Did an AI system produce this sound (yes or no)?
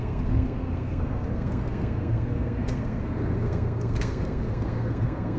yes